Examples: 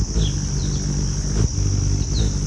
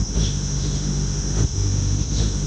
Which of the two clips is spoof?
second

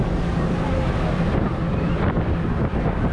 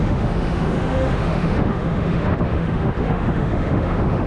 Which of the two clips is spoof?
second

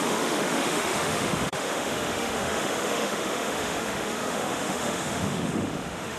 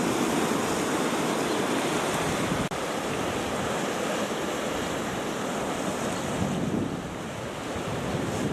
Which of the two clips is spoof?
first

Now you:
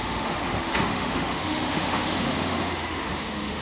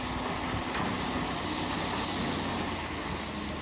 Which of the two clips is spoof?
first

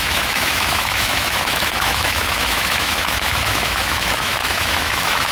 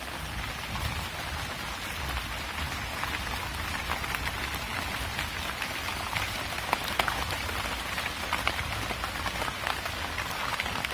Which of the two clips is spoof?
first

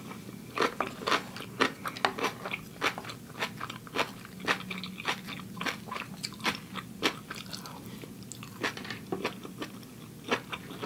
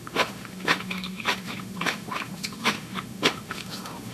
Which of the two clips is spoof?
second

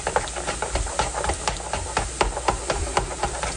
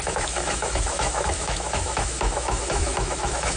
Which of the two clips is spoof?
second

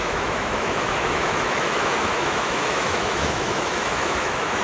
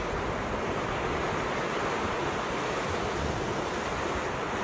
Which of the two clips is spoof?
first